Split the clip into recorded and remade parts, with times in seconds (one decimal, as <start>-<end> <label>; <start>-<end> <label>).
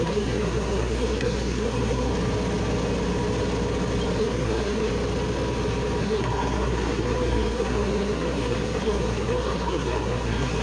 0.0-2.1 remade; 2.1-4.2 recorded; 4.2-4.9 remade; 4.9-6.0 recorded; 6.0-10.6 remade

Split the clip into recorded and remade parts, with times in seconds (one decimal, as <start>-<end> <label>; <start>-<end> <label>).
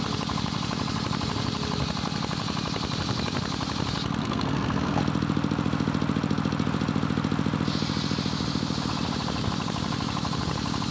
0.0-4.2 recorded; 4.2-5.0 remade; 5.0-10.9 recorded